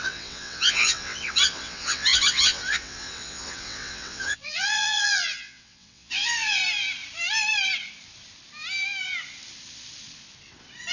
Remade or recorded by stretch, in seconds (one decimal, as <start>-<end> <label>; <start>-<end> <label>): 0.0-6.6 remade; 6.6-10.9 recorded